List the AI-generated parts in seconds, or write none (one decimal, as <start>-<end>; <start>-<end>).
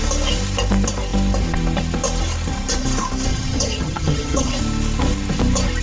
3.3-4.5